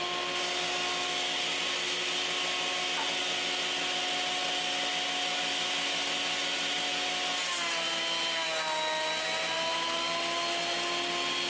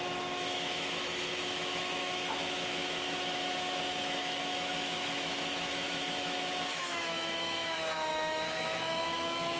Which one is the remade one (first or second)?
second